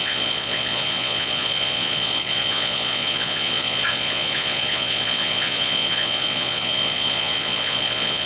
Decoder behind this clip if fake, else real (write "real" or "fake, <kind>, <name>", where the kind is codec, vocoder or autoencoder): fake, vocoder, Vocos